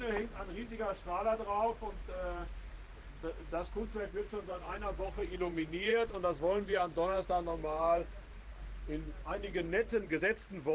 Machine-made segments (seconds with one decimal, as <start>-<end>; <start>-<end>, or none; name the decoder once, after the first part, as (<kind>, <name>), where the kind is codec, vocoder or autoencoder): 0.0-10.7 (vocoder, BigVGAN v2)